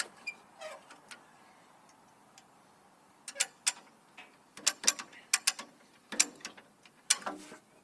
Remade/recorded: recorded